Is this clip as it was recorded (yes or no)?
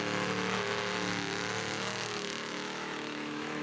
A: no